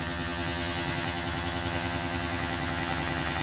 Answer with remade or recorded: remade